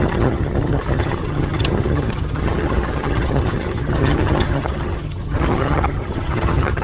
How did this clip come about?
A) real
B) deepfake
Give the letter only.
B